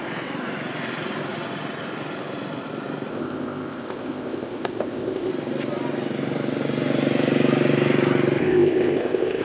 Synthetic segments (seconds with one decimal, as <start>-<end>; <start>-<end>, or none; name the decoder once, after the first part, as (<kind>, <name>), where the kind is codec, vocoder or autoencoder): 3.1-5.3 (codec, ZipCodec); 8.4-9.4